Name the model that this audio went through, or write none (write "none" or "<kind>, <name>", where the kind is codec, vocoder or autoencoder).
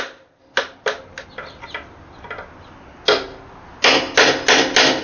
none